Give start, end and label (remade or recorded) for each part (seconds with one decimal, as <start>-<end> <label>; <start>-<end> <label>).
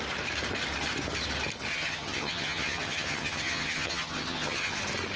0.0-1.7 recorded; 1.7-4.8 remade; 4.8-5.2 recorded